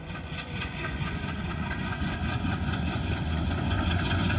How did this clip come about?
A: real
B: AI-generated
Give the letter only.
B